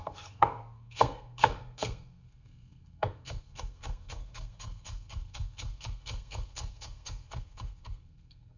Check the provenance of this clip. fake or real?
fake